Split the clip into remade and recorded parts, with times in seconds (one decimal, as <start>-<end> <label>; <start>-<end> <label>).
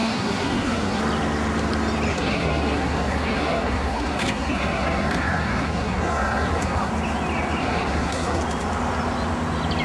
0.0-1.0 remade; 1.0-2.1 recorded; 2.1-6.9 remade; 6.9-7.6 recorded; 7.6-8.4 remade; 8.4-9.8 recorded